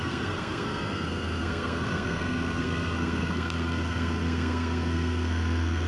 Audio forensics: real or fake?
fake